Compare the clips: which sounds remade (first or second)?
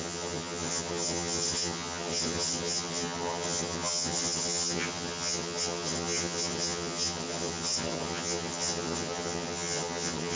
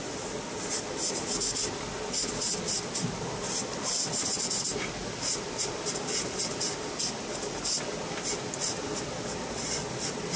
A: first